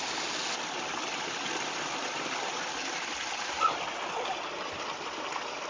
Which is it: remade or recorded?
recorded